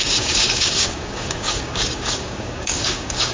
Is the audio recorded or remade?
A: remade